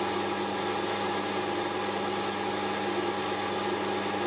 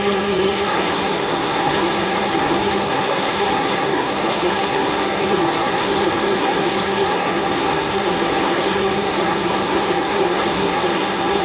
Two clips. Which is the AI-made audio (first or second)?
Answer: second